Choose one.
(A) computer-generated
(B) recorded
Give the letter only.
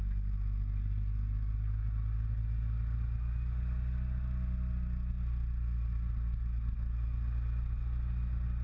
B